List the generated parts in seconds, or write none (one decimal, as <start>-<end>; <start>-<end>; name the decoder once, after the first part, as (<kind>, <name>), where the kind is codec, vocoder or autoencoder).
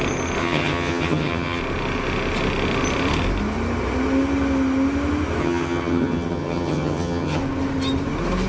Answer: 0.4-1.6 (vocoder, HiFi-GAN); 5.4-7.4